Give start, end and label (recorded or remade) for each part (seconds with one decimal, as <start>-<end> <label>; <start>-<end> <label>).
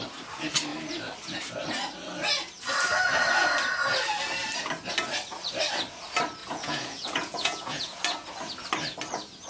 0.0-6.4 recorded; 6.4-8.0 remade; 8.0-9.5 recorded